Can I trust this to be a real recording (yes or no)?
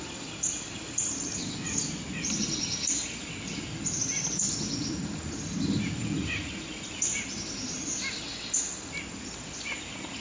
yes